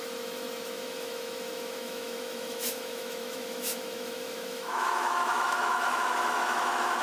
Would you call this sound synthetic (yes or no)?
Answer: yes